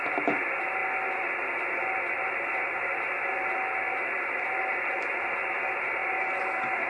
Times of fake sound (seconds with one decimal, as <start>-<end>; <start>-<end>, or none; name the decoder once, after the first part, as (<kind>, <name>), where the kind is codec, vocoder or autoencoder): none